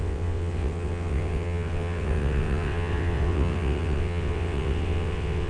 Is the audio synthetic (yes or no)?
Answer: yes